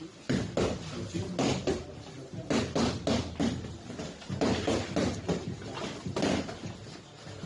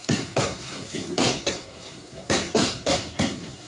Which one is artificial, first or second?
second